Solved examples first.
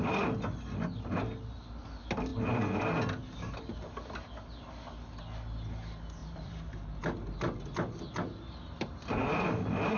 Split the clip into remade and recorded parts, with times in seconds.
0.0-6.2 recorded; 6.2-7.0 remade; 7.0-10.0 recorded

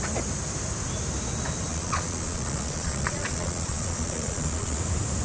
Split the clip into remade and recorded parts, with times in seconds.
0.0-1.7 recorded; 1.7-4.8 remade; 4.8-5.2 recorded